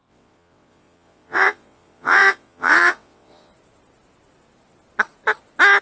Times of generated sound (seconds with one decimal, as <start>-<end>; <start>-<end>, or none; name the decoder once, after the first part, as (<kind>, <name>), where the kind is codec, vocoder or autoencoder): 0.0-3.5 (vocoder, WaveNeXt)